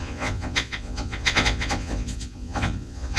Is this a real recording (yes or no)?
no